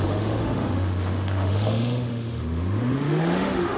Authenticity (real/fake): fake